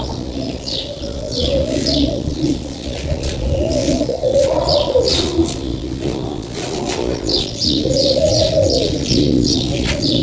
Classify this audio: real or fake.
fake